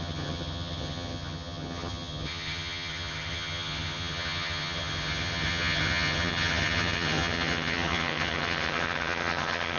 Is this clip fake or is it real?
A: fake